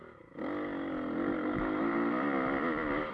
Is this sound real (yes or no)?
yes